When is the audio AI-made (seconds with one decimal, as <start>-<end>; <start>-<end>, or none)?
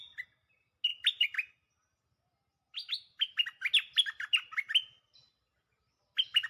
none